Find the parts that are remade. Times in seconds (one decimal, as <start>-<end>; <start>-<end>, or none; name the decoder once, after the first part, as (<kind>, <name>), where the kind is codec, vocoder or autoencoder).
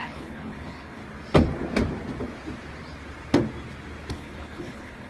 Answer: 0.0-1.0 (codec, HILCodec); 4.1-5.1